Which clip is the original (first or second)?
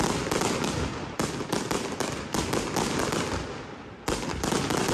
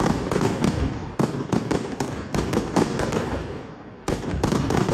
first